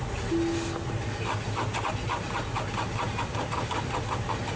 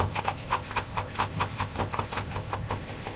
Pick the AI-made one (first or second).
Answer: second